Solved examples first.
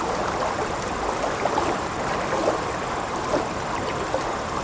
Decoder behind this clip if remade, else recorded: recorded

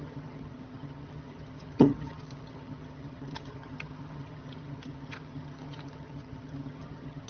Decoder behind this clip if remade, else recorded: remade, vocoder, HiFi-GAN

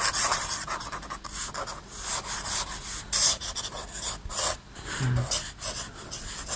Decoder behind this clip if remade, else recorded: recorded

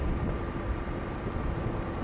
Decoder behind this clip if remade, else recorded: recorded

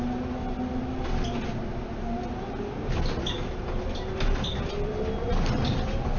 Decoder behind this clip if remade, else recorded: recorded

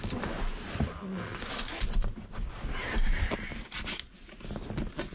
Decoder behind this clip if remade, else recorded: recorded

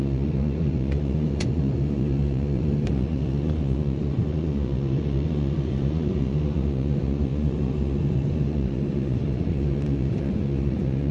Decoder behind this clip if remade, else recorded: remade, vocoder, Vocos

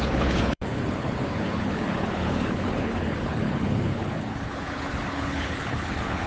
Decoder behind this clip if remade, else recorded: remade, codec, HILCodec